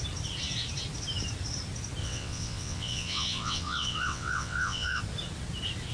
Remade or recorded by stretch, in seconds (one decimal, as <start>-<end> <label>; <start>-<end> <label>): 0.0-2.0 recorded; 2.0-5.0 remade; 5.0-5.9 recorded